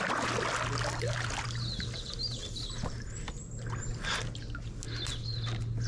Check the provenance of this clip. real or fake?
real